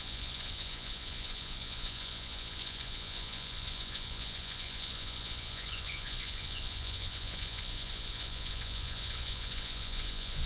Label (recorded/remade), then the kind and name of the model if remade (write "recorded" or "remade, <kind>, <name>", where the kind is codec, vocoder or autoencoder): remade, vocoder, Vocos